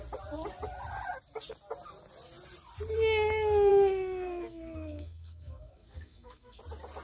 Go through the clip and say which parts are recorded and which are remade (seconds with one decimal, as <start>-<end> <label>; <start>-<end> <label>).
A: 0.0-3.7 recorded; 3.7-6.6 remade; 6.6-7.0 recorded